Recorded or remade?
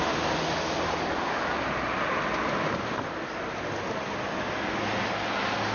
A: recorded